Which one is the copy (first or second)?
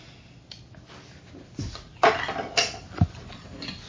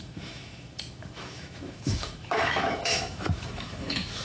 second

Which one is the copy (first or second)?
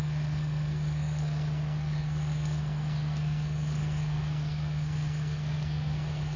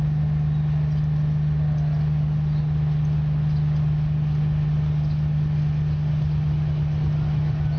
first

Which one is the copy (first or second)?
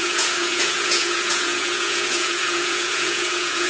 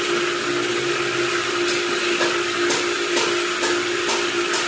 first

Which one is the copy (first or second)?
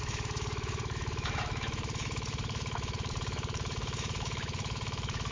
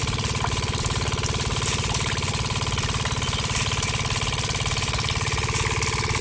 first